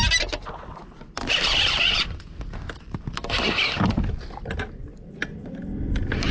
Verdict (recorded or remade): recorded